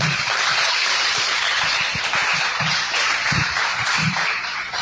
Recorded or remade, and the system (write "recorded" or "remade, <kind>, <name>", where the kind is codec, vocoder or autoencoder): remade, vocoder, BigVGAN v2